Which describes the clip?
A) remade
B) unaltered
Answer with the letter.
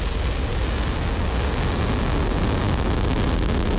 B